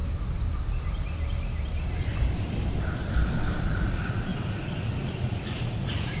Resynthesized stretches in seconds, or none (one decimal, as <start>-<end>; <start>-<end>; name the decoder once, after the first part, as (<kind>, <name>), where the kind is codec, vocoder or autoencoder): 3.6-6.2 (vocoder, Vocos)